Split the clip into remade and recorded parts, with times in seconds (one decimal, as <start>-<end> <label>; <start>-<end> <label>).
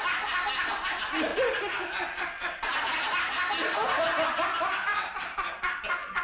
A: 0.0-6.2 recorded